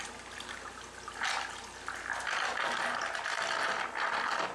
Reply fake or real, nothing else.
real